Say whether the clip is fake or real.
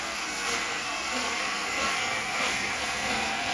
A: fake